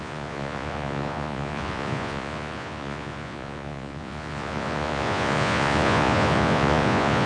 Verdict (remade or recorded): remade